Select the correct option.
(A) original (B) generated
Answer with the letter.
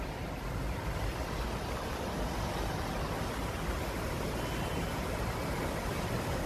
A